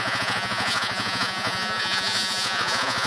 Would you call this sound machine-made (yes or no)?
yes